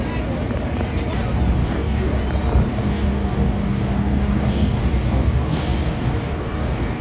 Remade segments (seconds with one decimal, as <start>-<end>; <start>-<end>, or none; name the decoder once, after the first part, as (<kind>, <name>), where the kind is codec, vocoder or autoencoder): 1.6-2.2 (codec, DAC); 2.7-7.0